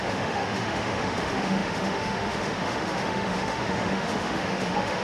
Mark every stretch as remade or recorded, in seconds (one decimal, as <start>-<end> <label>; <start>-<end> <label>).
0.0-5.0 remade